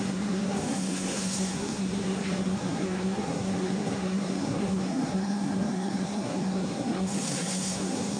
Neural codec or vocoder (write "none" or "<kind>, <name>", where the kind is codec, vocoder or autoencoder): codec, SNAC